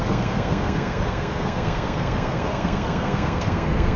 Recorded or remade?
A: remade